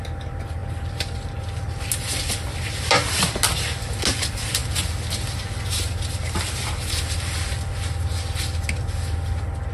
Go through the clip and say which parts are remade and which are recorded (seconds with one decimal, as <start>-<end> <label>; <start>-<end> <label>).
0.0-9.7 recorded